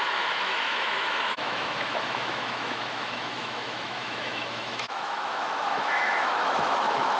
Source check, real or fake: fake